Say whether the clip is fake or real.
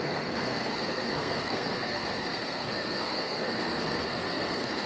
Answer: fake